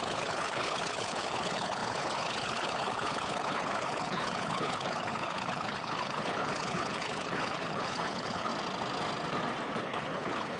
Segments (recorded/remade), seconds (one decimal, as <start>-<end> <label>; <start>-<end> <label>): 0.0-8.5 remade; 8.5-9.8 recorded; 9.8-10.6 remade